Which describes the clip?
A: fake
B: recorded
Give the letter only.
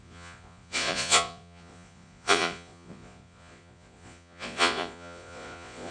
A